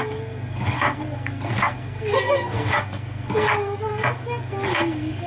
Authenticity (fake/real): fake